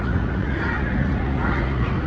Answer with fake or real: fake